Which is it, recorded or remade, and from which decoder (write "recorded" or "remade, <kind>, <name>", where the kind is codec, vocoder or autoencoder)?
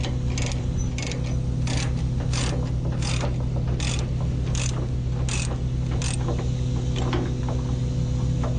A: recorded